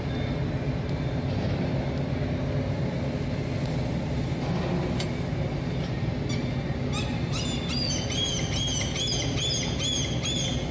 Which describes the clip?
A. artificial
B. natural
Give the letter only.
B